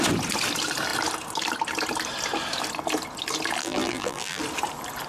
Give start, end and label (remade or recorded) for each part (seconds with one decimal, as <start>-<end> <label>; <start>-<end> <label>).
0.0-3.6 recorded; 3.6-4.4 remade; 4.4-5.1 recorded